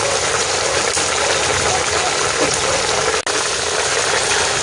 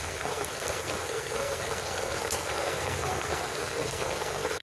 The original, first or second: first